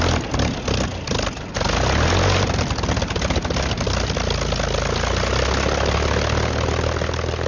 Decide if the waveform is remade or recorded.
recorded